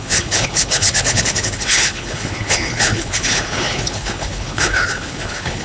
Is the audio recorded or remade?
remade